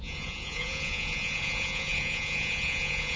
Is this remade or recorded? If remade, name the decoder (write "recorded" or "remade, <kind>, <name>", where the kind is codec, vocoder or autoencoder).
remade, vocoder, Vocos